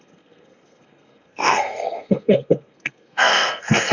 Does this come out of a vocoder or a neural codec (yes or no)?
yes